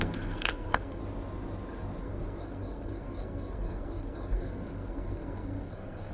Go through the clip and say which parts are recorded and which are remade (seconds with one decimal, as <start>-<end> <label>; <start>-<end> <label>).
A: 0.0-1.0 remade; 1.0-2.0 recorded; 2.0-6.1 remade